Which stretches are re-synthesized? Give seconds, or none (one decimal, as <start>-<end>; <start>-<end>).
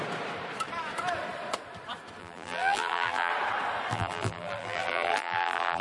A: 2.2-3.3; 3.9-5.8